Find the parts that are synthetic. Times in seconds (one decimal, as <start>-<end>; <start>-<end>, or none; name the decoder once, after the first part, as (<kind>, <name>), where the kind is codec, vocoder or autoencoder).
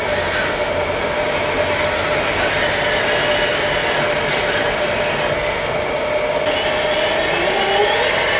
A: none